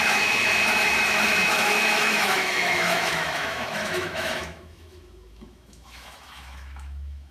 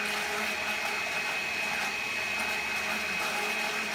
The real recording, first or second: second